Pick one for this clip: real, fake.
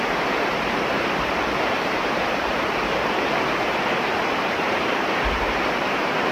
fake